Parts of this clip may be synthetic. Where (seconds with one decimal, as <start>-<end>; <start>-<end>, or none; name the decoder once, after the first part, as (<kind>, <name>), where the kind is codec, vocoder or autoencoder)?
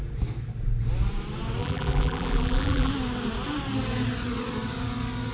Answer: 1.6-2.9 (vocoder, BigVGAN v2)